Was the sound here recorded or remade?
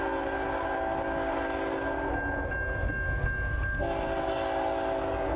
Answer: recorded